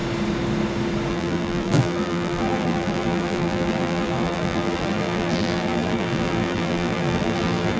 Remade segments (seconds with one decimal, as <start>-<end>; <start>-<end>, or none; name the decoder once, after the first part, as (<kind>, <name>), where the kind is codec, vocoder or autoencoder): 1.1-7.8 (vocoder, BigVGAN v2)